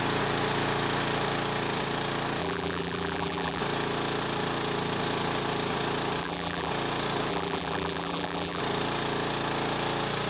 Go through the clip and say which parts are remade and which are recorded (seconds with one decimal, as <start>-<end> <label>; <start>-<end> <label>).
0.0-2.4 recorded; 2.4-3.6 remade; 3.6-6.2 recorded; 6.2-6.7 remade; 6.7-7.3 recorded; 7.3-8.6 remade; 8.6-10.3 recorded